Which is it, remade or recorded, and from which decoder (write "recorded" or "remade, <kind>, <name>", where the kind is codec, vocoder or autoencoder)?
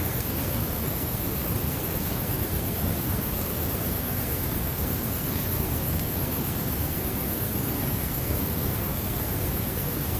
remade, codec, SNAC